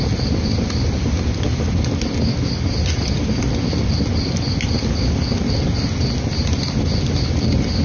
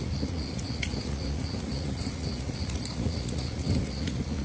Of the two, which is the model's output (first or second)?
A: second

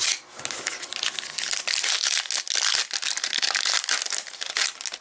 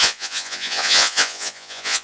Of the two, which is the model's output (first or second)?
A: second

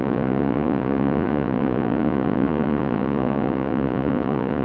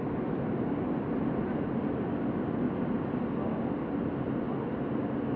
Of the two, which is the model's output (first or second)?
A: first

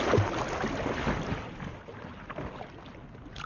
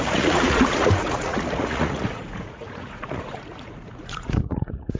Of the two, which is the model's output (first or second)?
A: second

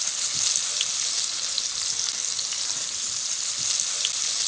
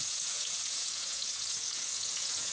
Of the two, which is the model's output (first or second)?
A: second